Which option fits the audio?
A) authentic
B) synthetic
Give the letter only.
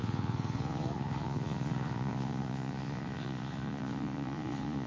B